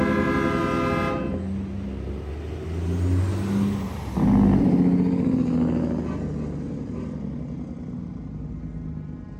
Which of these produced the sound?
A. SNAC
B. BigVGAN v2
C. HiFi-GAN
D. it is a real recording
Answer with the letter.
D